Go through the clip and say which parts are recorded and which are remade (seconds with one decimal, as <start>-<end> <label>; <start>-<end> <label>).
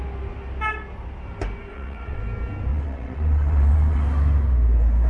0.0-1.7 recorded; 1.7-2.2 remade; 2.2-2.7 recorded; 2.7-4.0 remade; 4.0-5.1 recorded